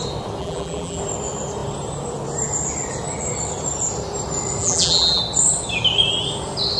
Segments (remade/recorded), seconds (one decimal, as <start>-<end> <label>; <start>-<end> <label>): 0.0-0.4 recorded; 0.4-1.0 remade; 1.0-4.6 recorded; 4.6-5.2 remade; 5.2-6.8 recorded